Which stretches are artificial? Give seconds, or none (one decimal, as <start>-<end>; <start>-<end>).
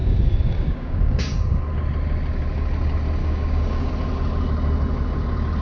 0.0-1.6; 3.2-3.9